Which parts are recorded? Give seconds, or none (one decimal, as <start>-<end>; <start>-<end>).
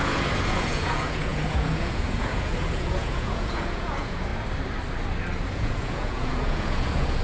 4.3-5.5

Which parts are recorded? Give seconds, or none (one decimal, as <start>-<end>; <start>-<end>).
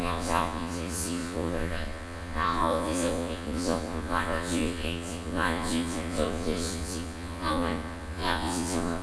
none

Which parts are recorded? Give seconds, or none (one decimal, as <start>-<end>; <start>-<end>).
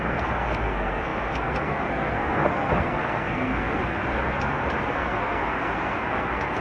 none